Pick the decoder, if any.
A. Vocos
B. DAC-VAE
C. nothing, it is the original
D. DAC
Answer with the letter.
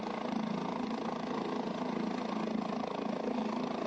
C